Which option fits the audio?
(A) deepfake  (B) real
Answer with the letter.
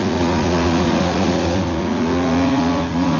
A